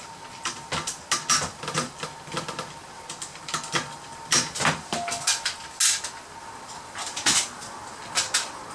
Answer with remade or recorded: recorded